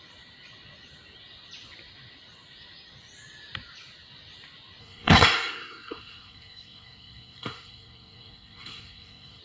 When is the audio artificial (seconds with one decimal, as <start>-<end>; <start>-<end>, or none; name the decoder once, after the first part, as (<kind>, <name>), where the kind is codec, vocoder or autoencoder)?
4.8-9.4 (codec, SNAC)